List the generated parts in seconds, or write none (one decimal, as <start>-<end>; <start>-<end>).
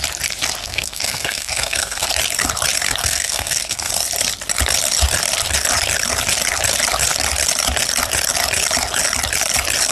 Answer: 0.6-2.1; 3.0-3.9